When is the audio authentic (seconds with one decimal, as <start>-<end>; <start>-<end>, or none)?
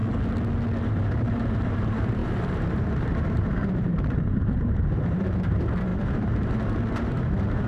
0.0-0.8